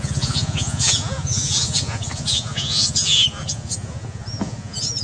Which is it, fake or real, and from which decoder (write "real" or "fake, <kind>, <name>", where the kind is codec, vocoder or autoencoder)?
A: fake, vocoder, Vocos